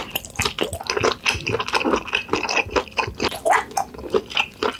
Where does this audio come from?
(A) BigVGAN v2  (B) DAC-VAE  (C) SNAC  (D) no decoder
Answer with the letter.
D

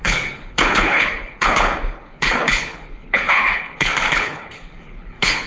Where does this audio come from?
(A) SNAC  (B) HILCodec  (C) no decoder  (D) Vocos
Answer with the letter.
B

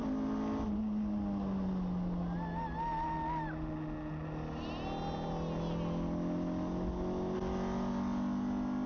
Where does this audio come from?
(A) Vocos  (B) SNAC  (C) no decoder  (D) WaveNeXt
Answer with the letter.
C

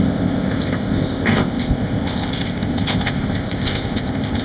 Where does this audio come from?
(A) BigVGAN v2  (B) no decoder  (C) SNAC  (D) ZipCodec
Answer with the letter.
D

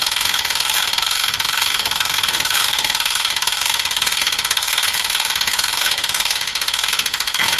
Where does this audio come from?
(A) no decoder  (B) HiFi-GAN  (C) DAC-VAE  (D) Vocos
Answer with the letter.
C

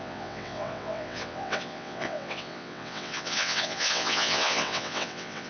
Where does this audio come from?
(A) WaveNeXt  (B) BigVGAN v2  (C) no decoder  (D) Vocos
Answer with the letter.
A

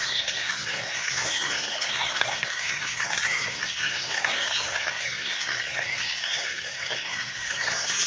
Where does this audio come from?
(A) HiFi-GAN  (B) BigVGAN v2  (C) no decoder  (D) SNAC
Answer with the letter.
D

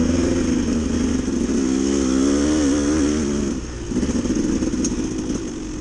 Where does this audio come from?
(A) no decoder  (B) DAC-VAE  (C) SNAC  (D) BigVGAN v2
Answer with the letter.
A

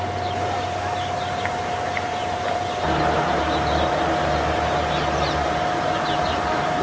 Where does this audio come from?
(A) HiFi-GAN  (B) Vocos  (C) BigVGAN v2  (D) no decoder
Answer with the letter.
D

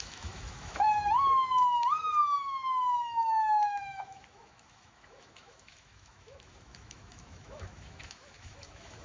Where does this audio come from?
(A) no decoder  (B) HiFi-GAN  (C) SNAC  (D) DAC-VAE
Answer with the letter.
D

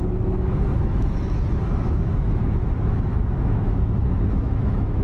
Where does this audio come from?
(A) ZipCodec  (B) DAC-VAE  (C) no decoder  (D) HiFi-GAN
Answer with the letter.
B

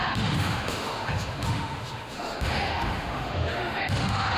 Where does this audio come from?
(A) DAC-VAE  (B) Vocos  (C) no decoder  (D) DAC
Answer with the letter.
A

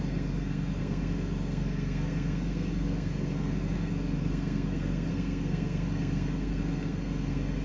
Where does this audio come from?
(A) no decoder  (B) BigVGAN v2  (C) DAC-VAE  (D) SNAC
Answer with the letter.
D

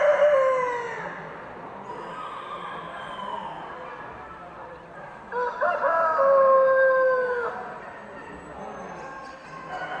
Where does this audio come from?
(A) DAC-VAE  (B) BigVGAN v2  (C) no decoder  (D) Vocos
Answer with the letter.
C